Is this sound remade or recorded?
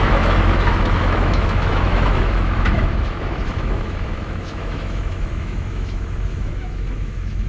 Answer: remade